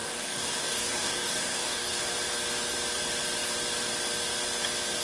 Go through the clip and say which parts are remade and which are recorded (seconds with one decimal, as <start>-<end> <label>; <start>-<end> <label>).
0.0-2.0 remade; 2.0-5.0 recorded